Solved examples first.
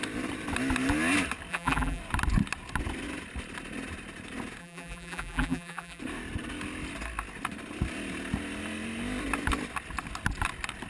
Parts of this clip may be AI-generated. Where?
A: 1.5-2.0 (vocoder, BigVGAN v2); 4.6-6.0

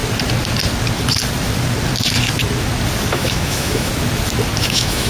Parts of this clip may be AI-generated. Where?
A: 3.1-3.9 (autoencoder, DAC-VAE); 4.6-5.1

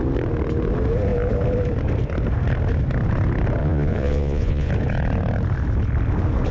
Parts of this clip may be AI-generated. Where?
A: 3.6-4.7 (vocoder, Vocos)

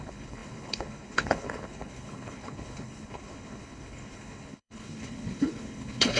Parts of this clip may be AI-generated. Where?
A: 0.0-6.2 (codec, HILCodec)

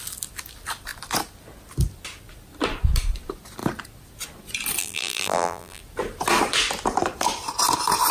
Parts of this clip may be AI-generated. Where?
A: 4.8-5.8 (vocoder, BigVGAN v2)

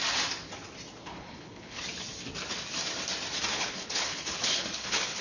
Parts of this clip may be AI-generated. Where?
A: 1.0-1.8 (codec, HILCodec); 3.5-5.2

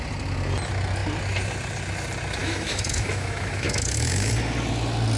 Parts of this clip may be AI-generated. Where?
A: 2.4-4.3 (autoencoder, DAC-VAE)

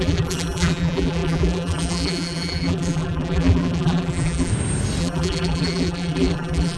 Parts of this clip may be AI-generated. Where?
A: 0.0-4.5 (vocoder, BigVGAN v2); 5.0-6.8